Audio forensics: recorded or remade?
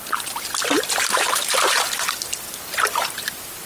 recorded